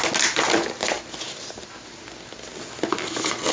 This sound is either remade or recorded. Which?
recorded